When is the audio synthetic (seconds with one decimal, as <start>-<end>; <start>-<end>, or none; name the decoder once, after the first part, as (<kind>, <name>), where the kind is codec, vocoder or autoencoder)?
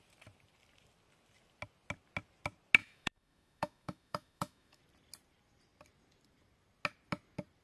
2.8-4.8 (autoencoder, DAC-VAE)